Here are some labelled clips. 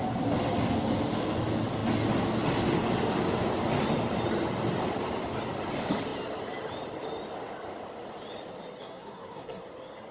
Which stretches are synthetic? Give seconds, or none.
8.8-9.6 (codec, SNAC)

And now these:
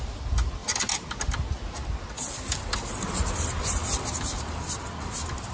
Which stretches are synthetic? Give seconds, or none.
none